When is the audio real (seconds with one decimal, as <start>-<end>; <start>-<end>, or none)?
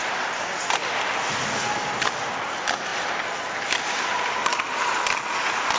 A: 0.0-5.8